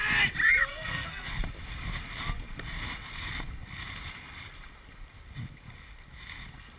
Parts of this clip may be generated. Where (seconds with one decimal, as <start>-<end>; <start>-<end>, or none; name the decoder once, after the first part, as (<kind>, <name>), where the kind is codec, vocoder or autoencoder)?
0.7-1.3 (codec, SNAC)